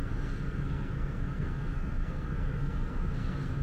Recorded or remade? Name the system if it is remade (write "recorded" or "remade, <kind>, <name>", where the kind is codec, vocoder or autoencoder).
remade, codec, SNAC